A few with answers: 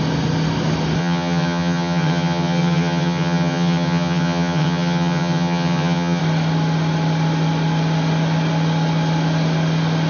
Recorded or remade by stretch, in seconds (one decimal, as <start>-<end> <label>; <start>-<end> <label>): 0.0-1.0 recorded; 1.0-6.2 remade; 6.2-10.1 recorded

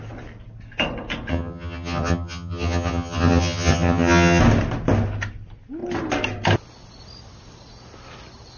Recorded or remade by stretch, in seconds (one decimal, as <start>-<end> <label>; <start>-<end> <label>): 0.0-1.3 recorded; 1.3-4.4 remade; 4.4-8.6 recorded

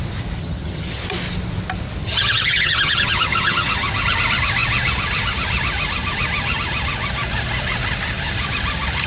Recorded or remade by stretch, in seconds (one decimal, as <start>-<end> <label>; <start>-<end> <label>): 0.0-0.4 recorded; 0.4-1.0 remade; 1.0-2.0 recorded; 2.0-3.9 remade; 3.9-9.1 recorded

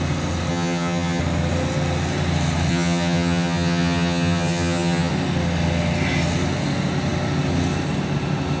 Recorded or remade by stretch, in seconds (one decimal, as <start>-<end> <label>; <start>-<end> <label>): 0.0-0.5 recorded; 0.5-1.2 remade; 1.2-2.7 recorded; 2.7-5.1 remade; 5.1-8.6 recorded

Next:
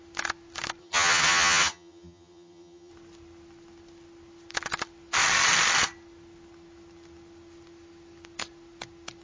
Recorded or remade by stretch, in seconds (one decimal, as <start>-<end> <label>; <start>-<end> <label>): 0.0-0.8 recorded; 0.8-2.9 remade; 2.9-9.2 recorded

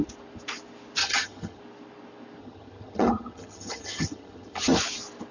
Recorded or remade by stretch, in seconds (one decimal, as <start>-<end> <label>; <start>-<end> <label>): 0.0-1.0 recorded; 1.0-1.6 remade; 1.6-2.4 recorded; 2.4-4.8 remade; 4.8-5.3 recorded

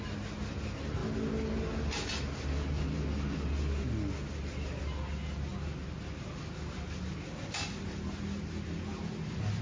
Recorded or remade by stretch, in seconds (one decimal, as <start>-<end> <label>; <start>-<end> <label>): 0.0-9.6 recorded